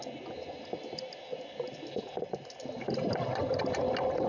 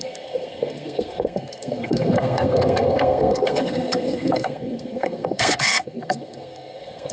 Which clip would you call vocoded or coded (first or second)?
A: second